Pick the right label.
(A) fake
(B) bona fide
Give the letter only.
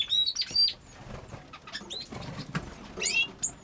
B